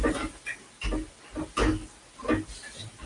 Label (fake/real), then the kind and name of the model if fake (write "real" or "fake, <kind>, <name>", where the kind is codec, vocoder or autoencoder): real